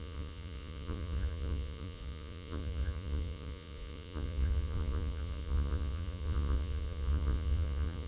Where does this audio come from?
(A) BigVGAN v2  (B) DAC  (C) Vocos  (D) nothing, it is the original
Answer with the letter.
C